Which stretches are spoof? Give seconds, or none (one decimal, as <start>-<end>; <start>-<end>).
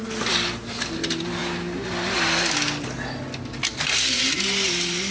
none